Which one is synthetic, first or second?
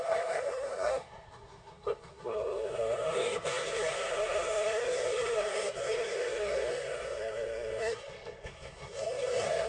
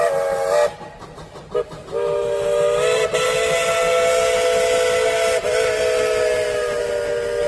first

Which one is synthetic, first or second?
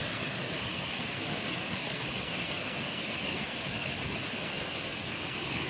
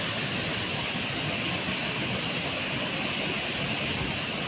first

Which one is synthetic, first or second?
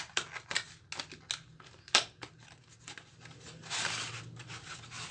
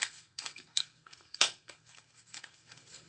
second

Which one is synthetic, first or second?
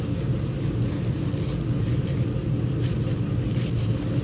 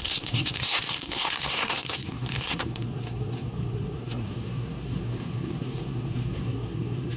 second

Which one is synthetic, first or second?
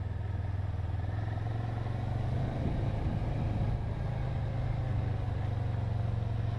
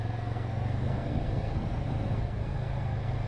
second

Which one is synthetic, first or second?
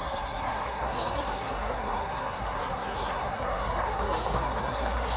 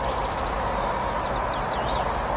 first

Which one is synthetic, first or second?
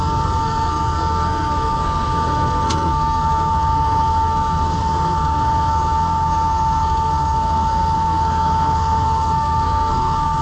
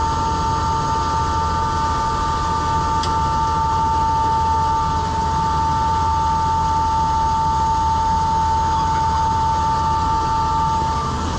first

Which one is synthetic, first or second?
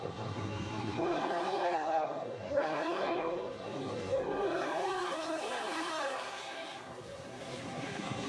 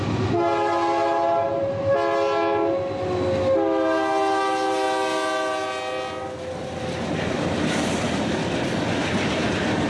first